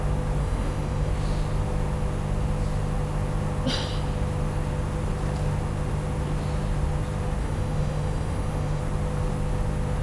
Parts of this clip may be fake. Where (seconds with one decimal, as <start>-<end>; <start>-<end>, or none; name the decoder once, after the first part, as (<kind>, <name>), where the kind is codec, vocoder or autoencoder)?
0.4-1.1 (autoencoder, DAC-VAE); 7.4-8.8